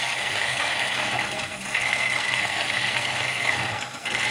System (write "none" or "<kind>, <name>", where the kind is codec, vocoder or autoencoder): codec, SNAC